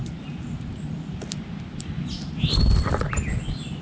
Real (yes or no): yes